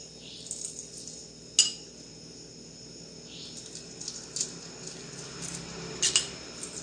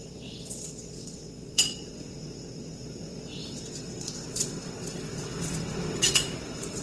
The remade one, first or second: second